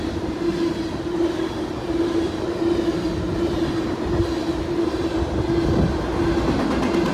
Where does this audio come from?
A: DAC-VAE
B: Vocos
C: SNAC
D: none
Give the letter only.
D